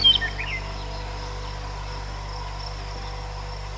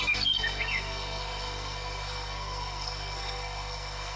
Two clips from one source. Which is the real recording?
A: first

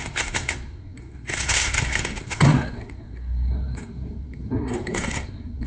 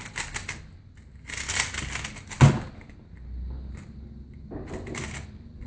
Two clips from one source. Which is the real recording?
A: second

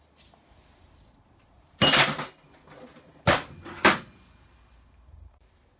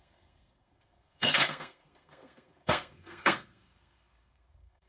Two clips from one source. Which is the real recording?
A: first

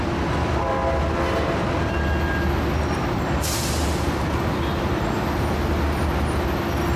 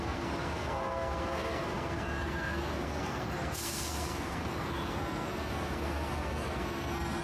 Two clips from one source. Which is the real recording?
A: first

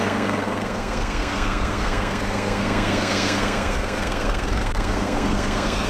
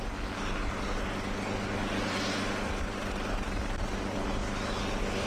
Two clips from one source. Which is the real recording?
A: second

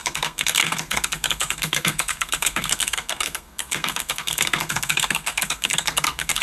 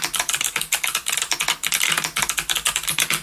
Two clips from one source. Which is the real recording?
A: second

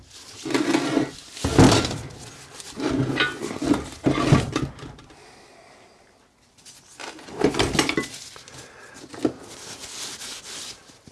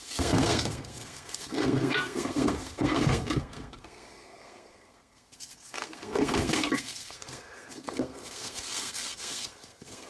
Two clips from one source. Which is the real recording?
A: first